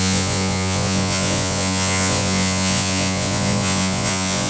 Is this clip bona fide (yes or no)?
no